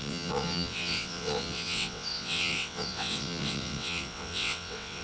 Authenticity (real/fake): fake